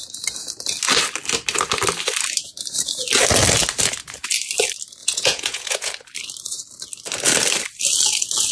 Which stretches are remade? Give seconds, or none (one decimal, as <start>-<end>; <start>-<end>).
5.0-5.9